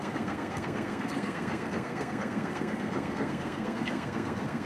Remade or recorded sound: remade